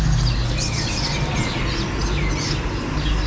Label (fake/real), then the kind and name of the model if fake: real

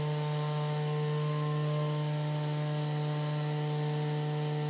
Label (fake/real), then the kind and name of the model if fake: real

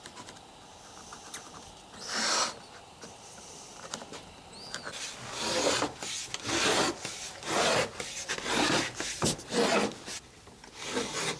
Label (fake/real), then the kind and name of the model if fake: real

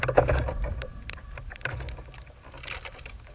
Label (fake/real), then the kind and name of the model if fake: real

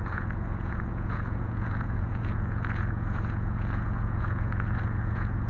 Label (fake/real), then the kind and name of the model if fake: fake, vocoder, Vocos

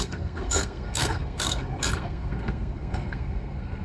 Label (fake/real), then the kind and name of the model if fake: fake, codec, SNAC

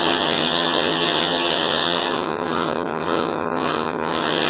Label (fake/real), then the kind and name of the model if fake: fake, vocoder, HiFi-GAN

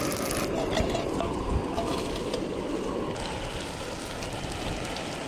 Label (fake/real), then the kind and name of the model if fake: real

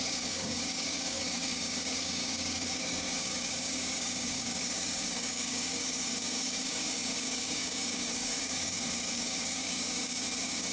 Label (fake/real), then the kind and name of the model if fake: fake, codec, DAC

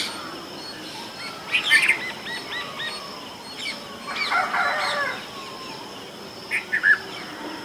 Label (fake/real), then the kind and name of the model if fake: real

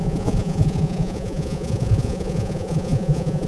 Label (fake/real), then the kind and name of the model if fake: fake, vocoder, Vocos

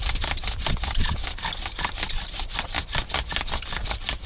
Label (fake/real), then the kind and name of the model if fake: real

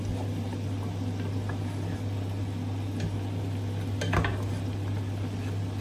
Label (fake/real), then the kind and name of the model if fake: real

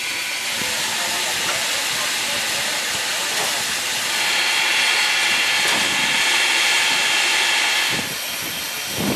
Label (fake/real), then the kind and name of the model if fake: fake, vocoder, BigVGAN v2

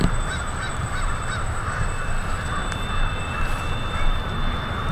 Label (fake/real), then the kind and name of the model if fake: fake, vocoder, BigVGAN v2